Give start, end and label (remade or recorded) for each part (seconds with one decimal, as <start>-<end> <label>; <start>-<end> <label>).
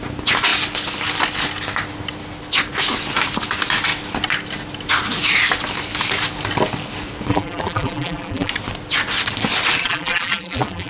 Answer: 0.0-7.3 recorded; 7.3-8.5 remade; 8.5-9.8 recorded; 9.8-10.9 remade